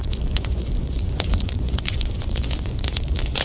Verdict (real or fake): fake